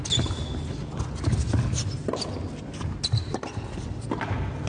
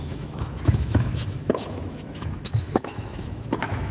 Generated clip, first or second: second